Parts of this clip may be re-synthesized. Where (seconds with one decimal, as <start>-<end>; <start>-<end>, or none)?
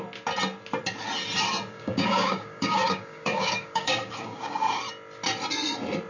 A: 1.7-4.8